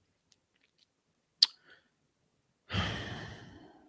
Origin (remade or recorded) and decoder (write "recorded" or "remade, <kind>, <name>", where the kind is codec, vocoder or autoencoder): recorded